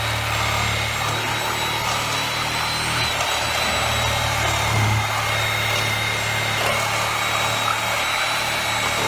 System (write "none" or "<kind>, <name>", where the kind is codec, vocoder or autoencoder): none